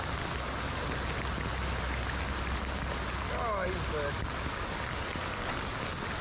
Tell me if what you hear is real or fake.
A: real